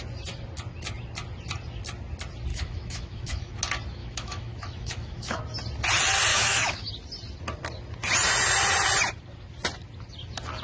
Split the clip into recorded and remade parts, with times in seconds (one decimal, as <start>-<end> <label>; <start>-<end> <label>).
0.0-2.5 recorded; 2.5-3.5 remade; 3.5-4.0 recorded; 4.0-5.4 remade; 5.4-6.3 recorded; 6.3-6.9 remade; 6.9-10.6 recorded